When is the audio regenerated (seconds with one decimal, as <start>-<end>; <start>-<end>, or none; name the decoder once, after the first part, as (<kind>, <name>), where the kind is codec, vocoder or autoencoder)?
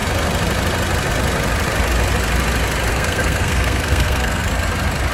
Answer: 2.9-4.5 (codec, SNAC)